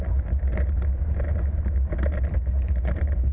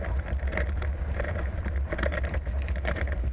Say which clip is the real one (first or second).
first